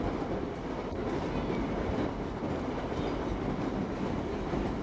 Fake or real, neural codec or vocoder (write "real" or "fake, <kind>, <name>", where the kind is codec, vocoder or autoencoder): real